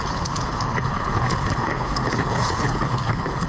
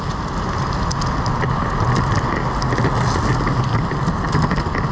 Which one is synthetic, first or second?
first